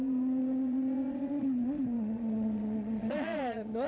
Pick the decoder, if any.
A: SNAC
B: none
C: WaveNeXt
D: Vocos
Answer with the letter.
D